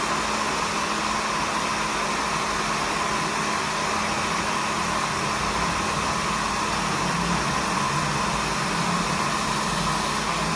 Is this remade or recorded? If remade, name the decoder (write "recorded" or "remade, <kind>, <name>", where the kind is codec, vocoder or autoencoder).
recorded